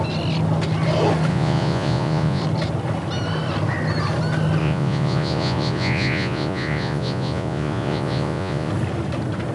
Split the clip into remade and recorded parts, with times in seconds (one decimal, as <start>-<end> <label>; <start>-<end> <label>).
0.0-1.3 recorded; 1.3-2.4 remade; 2.4-4.6 recorded; 4.6-8.7 remade; 8.7-9.5 recorded